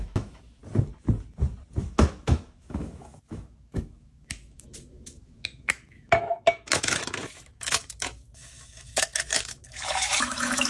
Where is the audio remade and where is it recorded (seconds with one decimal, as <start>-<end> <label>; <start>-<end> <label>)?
0.0-0.6 remade; 0.6-1.8 recorded; 1.8-10.7 remade